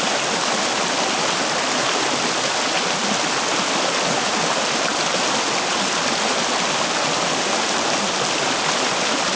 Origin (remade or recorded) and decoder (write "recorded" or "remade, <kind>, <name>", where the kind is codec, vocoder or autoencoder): recorded